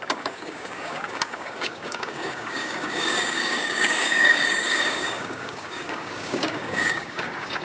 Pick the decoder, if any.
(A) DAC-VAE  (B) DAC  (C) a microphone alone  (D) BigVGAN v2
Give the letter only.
B